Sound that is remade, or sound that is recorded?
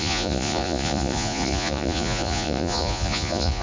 remade